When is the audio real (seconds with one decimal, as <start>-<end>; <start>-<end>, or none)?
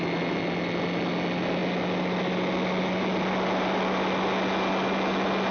0.0-5.5